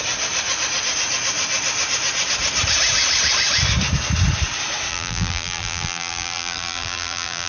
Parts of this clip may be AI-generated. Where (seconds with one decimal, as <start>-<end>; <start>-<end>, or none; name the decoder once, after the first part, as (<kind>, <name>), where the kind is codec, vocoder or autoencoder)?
4.9-7.5 (vocoder, BigVGAN v2)